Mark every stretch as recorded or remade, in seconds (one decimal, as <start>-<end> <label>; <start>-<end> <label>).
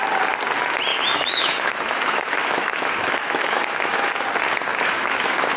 0.0-0.9 recorded; 0.9-4.2 remade; 4.2-4.7 recorded; 4.7-5.6 remade